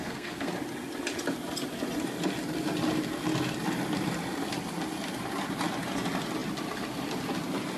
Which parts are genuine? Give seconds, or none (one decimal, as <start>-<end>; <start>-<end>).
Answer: 0.5-7.8